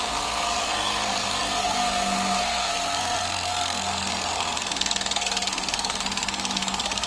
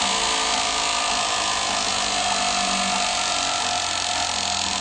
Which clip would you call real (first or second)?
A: second